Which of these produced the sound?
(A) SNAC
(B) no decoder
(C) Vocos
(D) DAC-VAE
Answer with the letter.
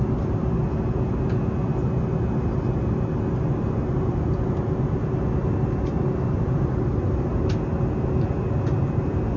B